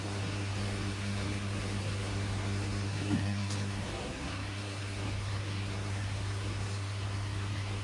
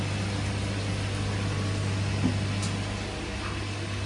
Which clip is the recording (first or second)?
second